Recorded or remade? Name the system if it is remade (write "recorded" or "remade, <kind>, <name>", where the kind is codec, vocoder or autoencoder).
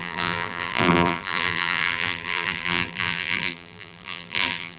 remade, vocoder, BigVGAN v2